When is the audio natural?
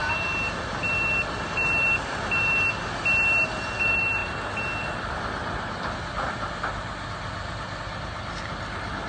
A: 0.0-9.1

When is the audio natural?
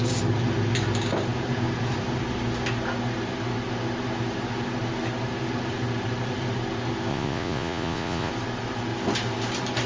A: 0.0-7.1; 8.3-9.9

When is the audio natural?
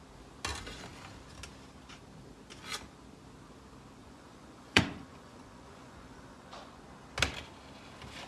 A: 0.0-4.0; 6.8-8.3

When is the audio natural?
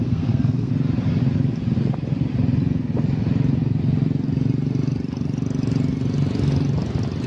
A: 0.7-7.3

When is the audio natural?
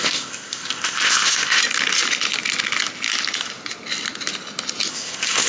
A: 1.6-4.9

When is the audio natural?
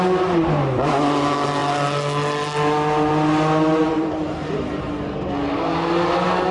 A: 0.0-3.8; 4.9-6.5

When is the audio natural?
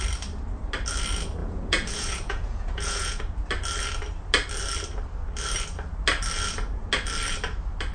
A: 0.0-1.4; 3.2-7.9